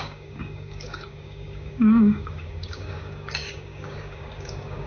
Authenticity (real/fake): fake